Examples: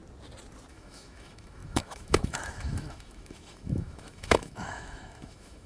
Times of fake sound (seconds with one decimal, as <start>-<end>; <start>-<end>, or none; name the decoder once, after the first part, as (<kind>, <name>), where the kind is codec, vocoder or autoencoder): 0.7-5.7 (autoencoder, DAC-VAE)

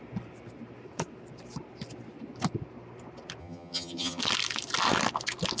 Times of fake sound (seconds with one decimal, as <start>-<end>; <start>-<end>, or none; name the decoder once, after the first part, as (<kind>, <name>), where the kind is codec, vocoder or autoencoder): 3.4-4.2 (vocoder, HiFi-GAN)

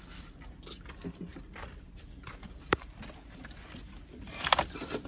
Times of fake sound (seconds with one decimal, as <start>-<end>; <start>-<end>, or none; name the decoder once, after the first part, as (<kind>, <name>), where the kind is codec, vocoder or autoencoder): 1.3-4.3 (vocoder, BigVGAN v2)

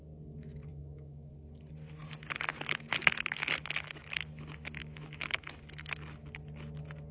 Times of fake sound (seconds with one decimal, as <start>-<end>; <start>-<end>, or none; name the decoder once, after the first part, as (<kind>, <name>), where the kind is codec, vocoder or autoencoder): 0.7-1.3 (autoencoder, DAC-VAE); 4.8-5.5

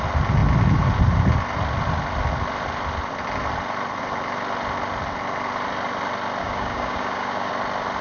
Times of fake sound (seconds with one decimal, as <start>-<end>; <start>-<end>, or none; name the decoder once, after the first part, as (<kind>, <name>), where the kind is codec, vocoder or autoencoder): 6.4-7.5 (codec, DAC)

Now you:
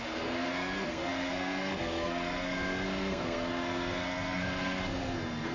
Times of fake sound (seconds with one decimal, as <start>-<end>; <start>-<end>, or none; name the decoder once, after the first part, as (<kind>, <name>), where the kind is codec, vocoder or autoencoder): 0.0-5.5 (codec, SNAC)